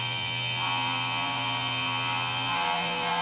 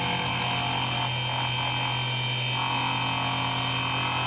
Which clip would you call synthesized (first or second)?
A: first